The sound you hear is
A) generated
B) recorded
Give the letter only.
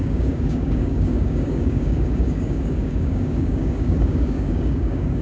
A